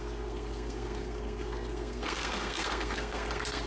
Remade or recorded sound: remade